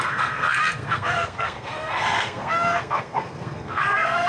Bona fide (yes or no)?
no